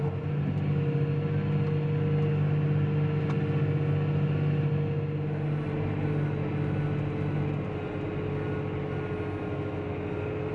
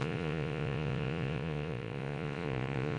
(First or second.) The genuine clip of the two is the first